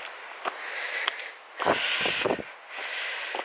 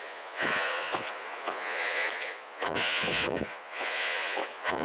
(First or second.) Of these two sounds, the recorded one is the first